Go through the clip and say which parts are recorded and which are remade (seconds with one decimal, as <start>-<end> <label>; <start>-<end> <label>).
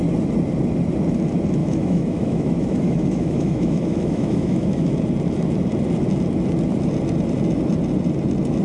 0.0-1.6 recorded; 1.6-4.9 remade; 4.9-8.6 recorded